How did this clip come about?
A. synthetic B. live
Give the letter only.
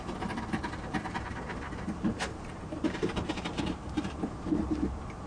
A